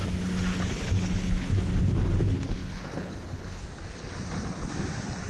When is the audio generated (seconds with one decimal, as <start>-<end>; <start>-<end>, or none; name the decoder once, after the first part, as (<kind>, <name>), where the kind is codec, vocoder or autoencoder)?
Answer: 0.5-1.7 (codec, HILCodec); 2.6-3.6